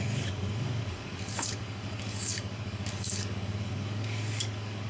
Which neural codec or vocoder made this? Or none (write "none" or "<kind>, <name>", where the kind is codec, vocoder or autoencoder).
codec, DAC